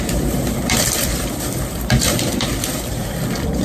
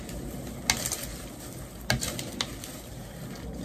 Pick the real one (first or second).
second